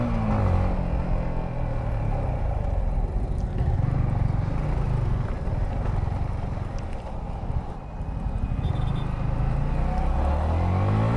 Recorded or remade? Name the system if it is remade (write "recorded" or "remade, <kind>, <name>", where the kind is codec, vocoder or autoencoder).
recorded